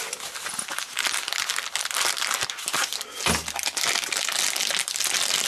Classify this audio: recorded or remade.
recorded